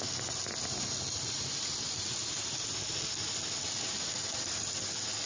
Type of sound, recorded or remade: recorded